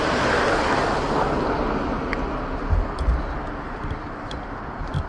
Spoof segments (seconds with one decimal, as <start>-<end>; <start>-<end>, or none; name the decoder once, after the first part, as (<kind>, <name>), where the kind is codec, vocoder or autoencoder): none